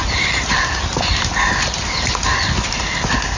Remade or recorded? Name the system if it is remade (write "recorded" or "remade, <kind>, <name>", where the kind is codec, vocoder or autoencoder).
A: recorded